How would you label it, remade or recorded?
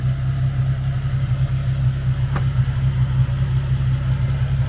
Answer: recorded